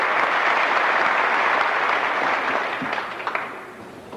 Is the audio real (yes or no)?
yes